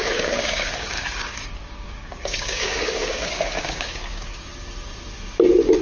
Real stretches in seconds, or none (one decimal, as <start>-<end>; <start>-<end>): 4.5-5.8